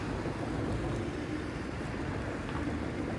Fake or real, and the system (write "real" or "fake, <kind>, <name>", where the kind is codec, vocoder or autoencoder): real